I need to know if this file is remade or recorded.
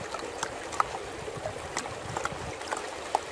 recorded